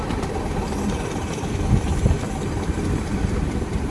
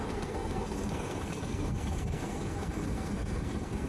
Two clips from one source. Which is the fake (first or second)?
second